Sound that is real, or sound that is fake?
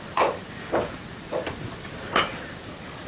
fake